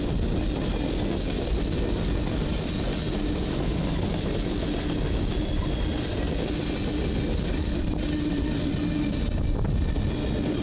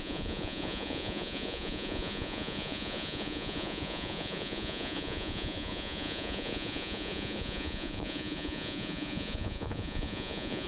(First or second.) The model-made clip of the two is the second